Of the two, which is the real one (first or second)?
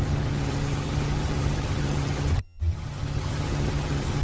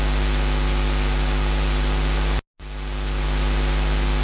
second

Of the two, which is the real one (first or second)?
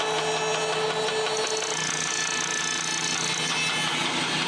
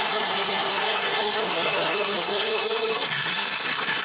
first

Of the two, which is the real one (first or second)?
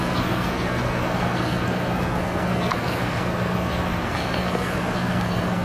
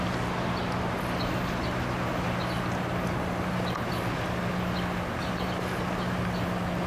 second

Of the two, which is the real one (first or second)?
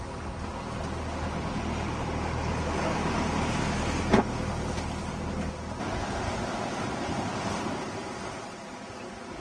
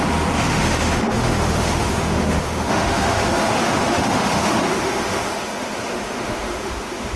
first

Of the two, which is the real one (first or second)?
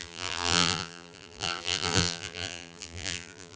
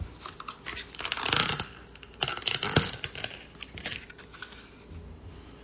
second